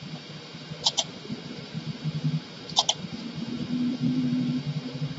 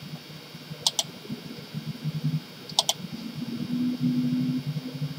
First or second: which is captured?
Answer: second